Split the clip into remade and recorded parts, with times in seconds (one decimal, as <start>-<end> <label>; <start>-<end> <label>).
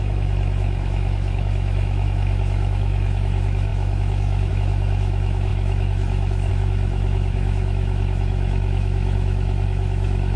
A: 0.0-10.4 remade